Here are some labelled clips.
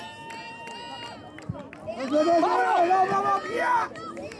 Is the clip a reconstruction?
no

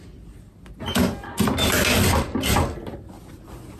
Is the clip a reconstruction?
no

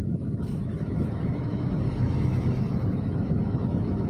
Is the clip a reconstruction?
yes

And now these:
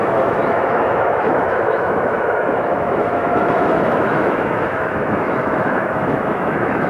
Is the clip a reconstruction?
yes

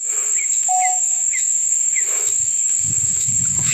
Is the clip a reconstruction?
yes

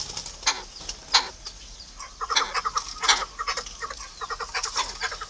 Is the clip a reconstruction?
no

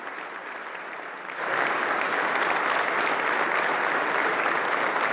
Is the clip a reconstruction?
no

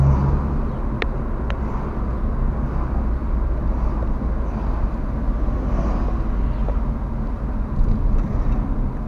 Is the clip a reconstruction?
no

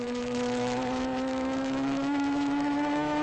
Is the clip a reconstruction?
yes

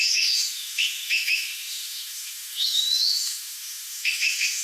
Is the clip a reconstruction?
yes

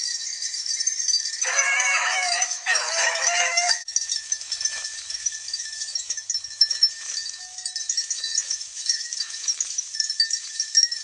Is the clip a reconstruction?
yes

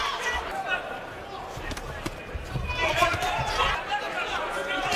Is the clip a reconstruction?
no